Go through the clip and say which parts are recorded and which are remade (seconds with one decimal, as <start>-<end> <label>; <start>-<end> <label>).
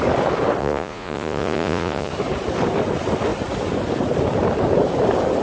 0.0-0.6 recorded; 0.6-2.1 remade; 2.1-5.4 recorded